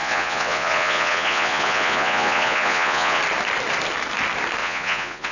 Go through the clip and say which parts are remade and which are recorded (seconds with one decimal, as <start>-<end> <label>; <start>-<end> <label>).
0.0-3.2 remade; 3.2-4.6 recorded; 4.6-5.3 remade